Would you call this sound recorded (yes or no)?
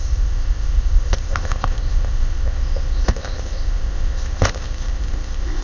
no